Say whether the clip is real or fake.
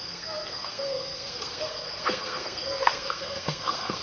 fake